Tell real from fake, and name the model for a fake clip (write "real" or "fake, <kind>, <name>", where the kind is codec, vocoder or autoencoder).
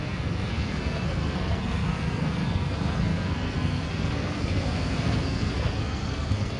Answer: fake, codec, SNAC